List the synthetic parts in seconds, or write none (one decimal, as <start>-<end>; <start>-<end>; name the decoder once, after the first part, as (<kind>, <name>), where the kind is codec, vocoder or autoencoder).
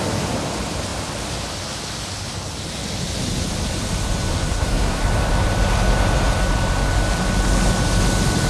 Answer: 4.3-5.0 (codec, SNAC)